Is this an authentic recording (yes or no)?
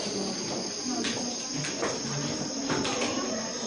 yes